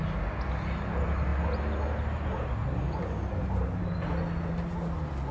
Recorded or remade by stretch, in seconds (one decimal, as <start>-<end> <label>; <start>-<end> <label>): 0.0-5.3 recorded